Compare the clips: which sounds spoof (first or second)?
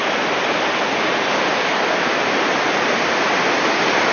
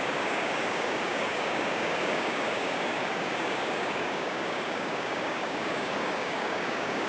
second